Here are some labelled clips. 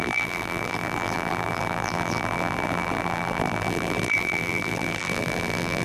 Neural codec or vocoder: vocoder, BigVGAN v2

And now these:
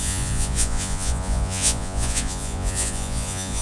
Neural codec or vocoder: vocoder, Vocos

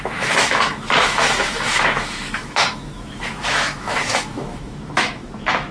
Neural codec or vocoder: autoencoder, DAC-VAE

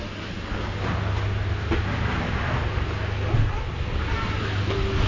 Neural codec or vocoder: none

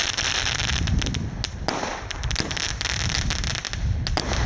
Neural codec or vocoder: none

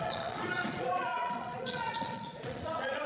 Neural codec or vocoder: vocoder, Vocos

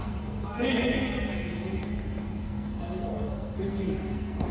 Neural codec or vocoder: codec, SNAC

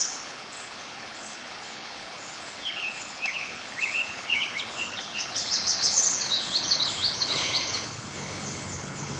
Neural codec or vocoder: codec, HILCodec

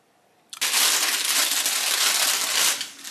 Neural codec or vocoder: none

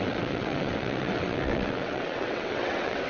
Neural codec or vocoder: vocoder, WaveNeXt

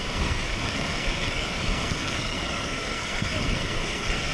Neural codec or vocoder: codec, SNAC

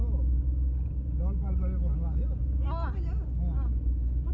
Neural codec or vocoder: none